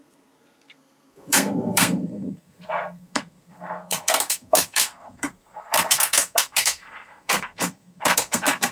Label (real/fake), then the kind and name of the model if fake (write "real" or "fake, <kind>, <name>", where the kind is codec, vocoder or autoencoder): fake, codec, SNAC